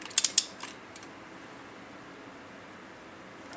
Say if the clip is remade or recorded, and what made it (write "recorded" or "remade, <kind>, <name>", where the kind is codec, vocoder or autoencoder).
recorded